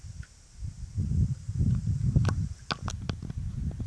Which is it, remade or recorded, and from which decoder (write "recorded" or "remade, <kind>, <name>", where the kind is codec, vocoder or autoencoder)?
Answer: recorded